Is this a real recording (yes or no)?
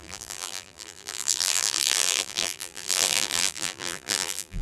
no